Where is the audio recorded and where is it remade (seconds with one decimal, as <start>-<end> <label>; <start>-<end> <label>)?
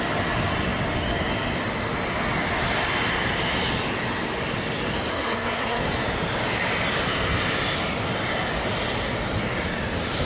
0.0-5.1 recorded; 5.1-5.8 remade; 5.8-10.3 recorded